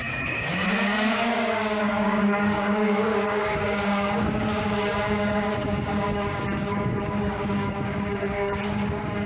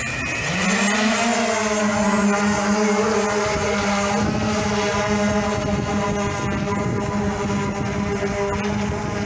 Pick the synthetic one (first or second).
first